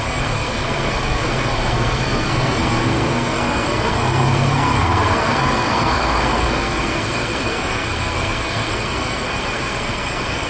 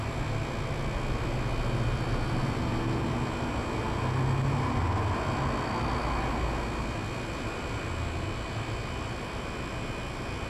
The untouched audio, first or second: second